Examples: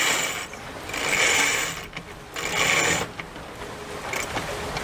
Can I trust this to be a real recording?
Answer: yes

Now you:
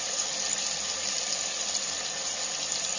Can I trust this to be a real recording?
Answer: yes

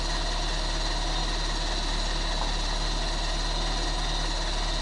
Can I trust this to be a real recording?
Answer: yes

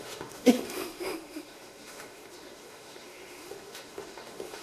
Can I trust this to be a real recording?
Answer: no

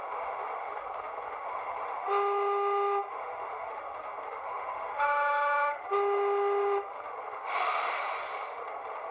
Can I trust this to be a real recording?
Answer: no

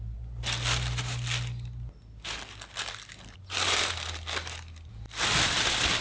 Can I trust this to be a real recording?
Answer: yes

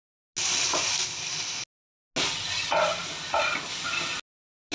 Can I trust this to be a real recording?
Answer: yes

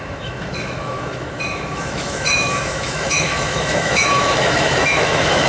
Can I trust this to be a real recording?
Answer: no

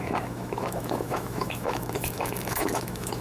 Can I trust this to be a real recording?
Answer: no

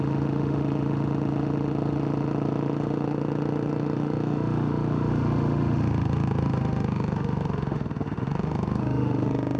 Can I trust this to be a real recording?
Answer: no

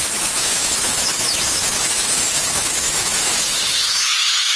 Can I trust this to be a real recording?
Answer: no